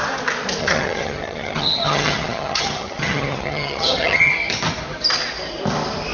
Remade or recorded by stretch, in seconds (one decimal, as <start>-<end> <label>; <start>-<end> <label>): 0.0-0.6 recorded; 0.6-4.3 remade; 4.3-6.1 recorded